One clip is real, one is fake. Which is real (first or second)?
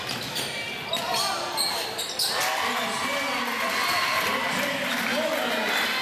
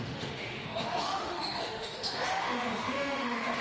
first